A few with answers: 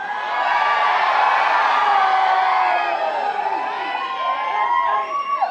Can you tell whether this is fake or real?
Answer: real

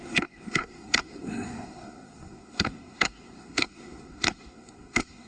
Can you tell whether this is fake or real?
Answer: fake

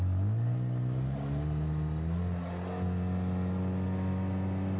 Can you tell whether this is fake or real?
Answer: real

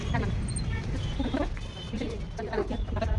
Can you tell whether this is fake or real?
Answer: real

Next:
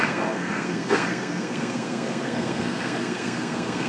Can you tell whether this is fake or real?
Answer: fake